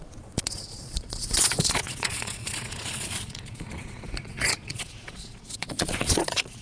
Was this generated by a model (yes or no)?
yes